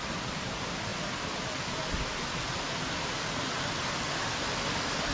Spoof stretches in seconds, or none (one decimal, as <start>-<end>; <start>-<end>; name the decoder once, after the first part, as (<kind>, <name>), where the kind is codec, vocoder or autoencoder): none